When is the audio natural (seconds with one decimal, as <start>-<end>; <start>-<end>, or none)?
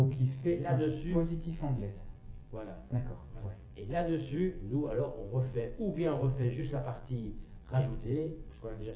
none